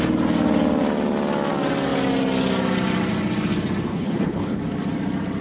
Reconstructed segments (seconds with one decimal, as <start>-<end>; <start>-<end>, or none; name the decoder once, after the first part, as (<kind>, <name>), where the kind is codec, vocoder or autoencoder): 3.9-4.6 (codec, HILCodec)